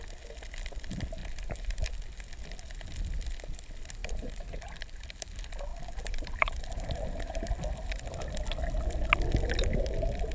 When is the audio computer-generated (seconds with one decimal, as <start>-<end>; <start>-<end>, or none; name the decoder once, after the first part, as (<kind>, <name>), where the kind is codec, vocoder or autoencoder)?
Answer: 1.2-1.9 (vocoder, BigVGAN v2); 4.0-5.3; 5.7-7.5